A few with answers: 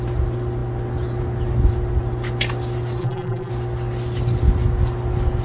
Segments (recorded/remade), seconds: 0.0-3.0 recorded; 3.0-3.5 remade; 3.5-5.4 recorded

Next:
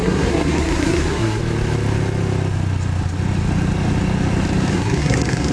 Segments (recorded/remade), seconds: 0.0-1.4 remade; 1.4-4.7 recorded; 4.7-5.5 remade

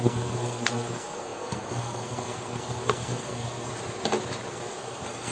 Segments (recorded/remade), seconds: 0.0-3.7 remade; 3.7-4.5 recorded; 4.5-5.3 remade

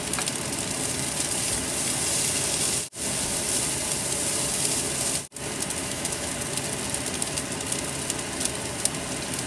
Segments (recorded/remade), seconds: 0.0-5.8 recorded; 5.8-6.3 remade; 6.3-9.5 recorded

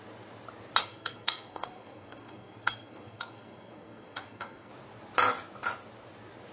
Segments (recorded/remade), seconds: 0.0-0.8 recorded; 0.8-4.7 remade; 4.7-6.5 recorded

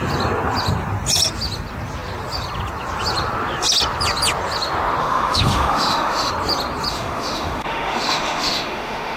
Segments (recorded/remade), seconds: 0.0-5.0 recorded; 5.0-6.3 remade; 6.3-6.9 recorded; 6.9-9.2 remade